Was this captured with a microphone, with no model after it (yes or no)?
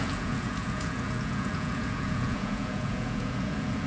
no